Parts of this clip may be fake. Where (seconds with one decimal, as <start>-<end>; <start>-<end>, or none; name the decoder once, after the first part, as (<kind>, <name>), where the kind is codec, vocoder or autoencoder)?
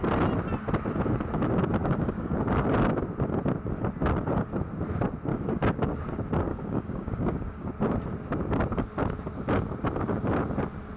1.8-2.3 (codec, DAC); 5.3-6.0; 6.5-7.7